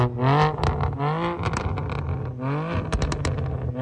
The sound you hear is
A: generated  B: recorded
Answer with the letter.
B